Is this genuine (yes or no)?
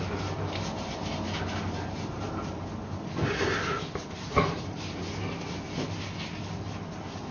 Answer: yes